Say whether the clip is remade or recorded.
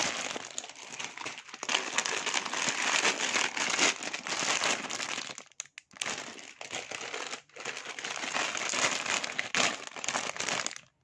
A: recorded